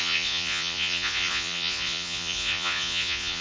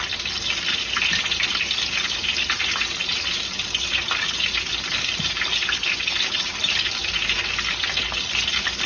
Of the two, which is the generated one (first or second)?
first